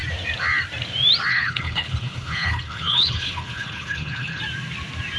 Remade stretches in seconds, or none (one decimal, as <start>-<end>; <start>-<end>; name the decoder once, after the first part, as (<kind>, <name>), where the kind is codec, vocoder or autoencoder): 1.3-4.4 (codec, HILCodec)